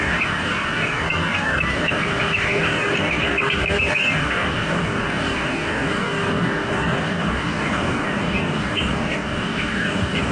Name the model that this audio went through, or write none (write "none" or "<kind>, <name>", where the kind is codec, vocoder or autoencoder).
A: codec, DAC